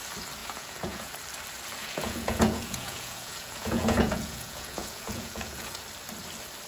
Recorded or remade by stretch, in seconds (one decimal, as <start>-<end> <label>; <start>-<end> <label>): 0.0-0.4 recorded; 0.4-1.1 remade; 1.1-1.8 recorded; 1.8-5.8 remade; 5.8-6.7 recorded